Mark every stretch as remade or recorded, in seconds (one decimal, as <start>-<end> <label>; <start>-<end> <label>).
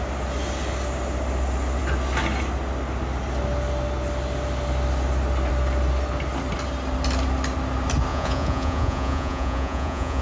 0.0-8.1 recorded; 8.1-10.2 remade